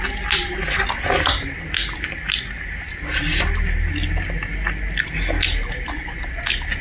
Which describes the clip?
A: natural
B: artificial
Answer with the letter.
A